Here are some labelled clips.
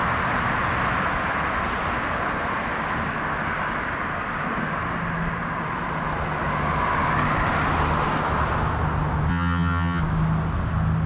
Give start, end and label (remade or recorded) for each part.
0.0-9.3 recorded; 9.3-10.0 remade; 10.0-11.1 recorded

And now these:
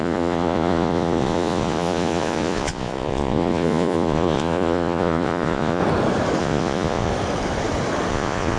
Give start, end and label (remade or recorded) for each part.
0.0-5.8 remade; 5.8-6.4 recorded; 6.4-7.1 remade; 7.1-8.1 recorded; 8.1-8.6 remade

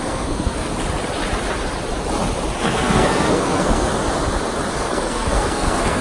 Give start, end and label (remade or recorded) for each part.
0.0-0.7 remade; 0.7-2.6 recorded; 2.6-3.9 remade; 3.9-4.7 recorded; 4.7-6.0 remade

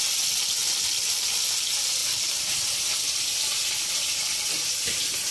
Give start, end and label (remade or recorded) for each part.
0.0-5.3 recorded

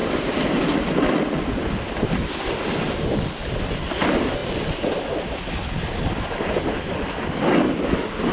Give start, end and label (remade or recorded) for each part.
0.0-8.3 recorded

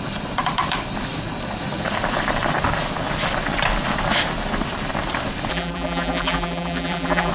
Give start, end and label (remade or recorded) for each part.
0.0-5.5 recorded; 5.5-7.3 remade

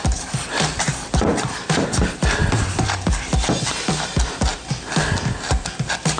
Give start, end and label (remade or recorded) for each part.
0.0-1.3 recorded; 1.3-1.8 remade; 1.8-6.2 recorded